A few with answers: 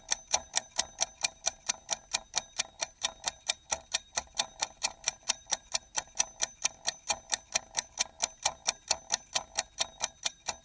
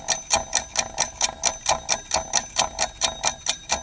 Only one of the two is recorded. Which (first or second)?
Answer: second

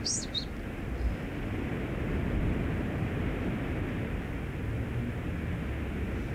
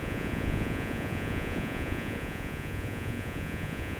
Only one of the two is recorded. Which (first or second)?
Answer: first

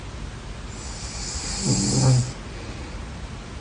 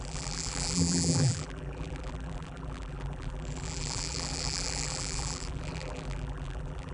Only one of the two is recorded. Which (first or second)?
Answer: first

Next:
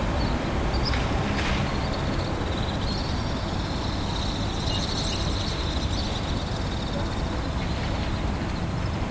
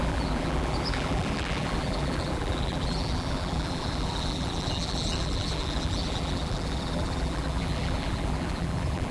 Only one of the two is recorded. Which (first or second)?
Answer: first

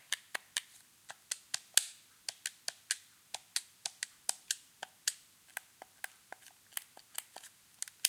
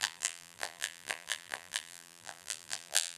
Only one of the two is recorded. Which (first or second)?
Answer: first